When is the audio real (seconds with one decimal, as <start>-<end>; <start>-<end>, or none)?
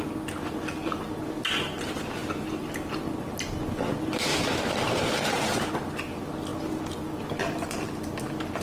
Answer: 0.0-4.3; 5.7-8.6